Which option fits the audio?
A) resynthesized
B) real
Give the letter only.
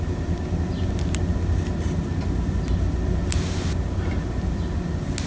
B